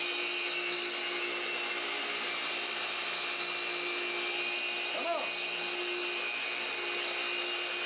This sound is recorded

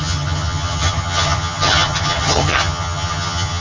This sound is remade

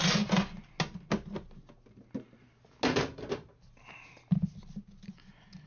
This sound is recorded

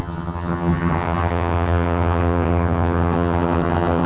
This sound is remade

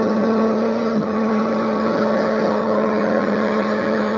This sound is remade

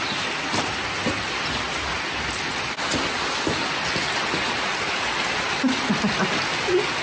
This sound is recorded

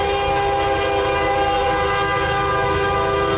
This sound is recorded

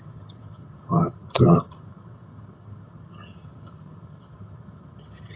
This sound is remade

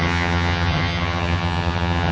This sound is remade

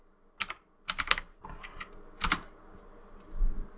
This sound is recorded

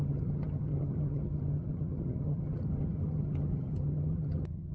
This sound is remade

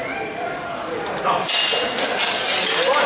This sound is recorded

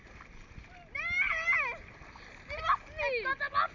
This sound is recorded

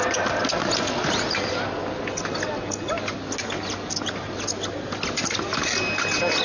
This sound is recorded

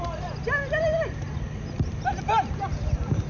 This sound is recorded